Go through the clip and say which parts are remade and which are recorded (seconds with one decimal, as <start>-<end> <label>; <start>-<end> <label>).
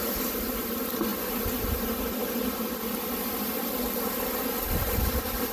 0.0-5.5 recorded